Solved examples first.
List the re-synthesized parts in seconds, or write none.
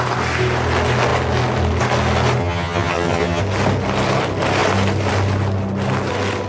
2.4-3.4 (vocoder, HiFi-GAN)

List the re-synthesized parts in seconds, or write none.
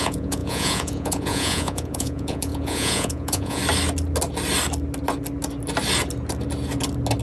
0.0-3.6 (vocoder, Vocos)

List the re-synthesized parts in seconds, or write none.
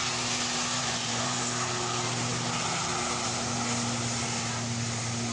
0.7-1.4 (vocoder, Vocos)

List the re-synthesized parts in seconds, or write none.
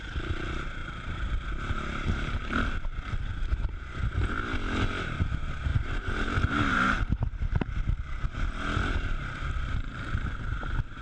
0.8-1.5 (vocoder, BigVGAN v2); 5.7-7.0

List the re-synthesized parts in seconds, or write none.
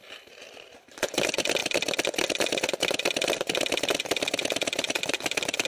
none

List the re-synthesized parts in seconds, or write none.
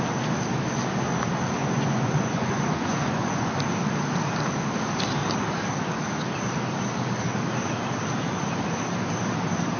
1.6-3.5 (vocoder, Vocos)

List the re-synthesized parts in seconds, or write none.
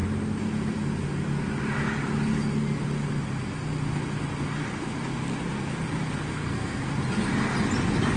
6.3-6.9 (codec, SNAC)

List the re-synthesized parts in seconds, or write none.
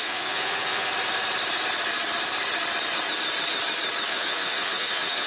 0.0-0.9 (vocoder, Vocos); 4.1-5.3